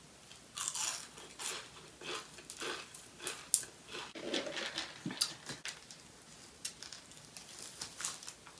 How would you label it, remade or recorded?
recorded